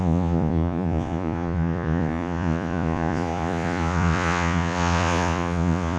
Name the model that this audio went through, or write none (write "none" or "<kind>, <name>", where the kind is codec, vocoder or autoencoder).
vocoder, Vocos